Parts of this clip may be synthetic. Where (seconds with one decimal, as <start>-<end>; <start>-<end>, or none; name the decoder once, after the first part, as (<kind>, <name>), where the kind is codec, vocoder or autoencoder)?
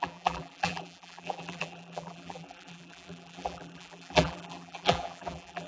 0.0-5.7 (vocoder, BigVGAN v2)